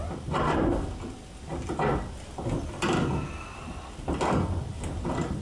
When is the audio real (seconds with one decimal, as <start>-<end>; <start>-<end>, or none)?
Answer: 0.0-5.4